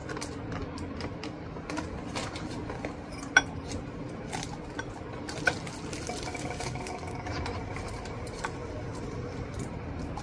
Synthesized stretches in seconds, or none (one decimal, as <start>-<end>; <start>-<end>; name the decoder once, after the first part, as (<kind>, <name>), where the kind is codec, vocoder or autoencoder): 6.3-7.3 (codec, DAC)